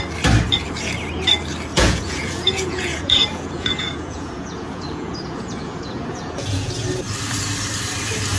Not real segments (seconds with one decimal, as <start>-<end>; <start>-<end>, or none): 1.7-6.7